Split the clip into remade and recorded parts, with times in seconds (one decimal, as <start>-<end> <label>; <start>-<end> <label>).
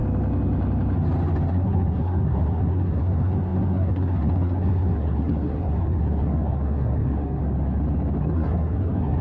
0.0-1.5 recorded; 1.5-7.4 remade; 7.4-8.2 recorded; 8.2-9.2 remade